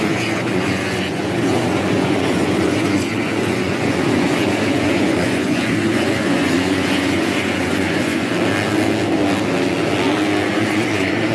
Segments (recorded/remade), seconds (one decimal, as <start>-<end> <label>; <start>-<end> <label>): 0.0-8.3 remade; 8.3-10.5 recorded; 10.5-11.3 remade